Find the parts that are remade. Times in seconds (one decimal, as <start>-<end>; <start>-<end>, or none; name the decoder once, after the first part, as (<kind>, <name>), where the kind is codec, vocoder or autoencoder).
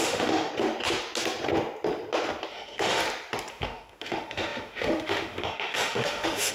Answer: 0.0-0.5 (autoencoder, DAC-VAE); 2.5-3.0; 3.5-6.5